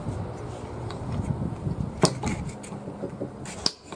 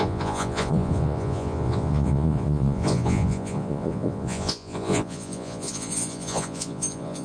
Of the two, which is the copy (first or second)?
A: second